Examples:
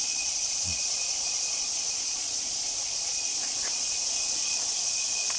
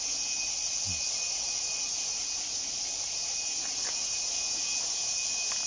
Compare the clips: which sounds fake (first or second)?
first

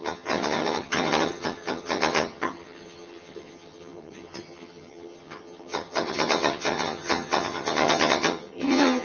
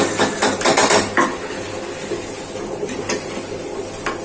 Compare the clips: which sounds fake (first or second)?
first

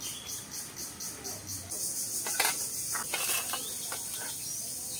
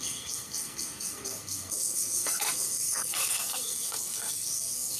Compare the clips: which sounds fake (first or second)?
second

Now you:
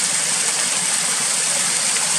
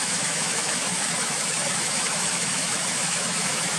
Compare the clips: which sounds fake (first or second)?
second